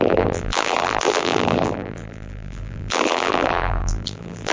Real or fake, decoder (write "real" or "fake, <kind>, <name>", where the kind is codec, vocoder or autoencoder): fake, vocoder, BigVGAN v2